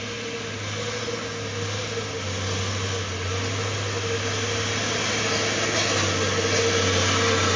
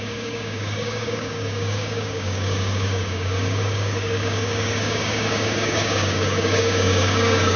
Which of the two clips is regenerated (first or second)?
second